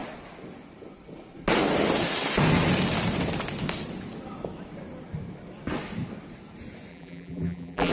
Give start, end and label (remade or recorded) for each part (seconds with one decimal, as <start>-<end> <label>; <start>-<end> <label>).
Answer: 0.0-6.9 recorded; 6.9-7.9 remade